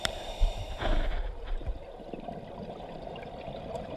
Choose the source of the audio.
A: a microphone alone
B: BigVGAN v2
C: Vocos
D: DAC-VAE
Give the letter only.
B